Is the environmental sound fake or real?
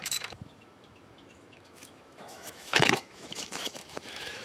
fake